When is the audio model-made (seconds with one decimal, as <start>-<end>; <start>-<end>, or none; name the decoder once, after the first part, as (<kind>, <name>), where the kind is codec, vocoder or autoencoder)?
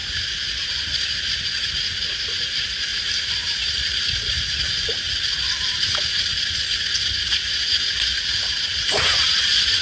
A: 2.9-4.4 (vocoder, BigVGAN v2)